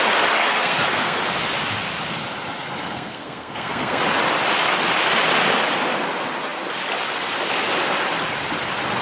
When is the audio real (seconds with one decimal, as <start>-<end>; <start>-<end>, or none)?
0.0-0.4; 1.2-2.8; 4.0-9.0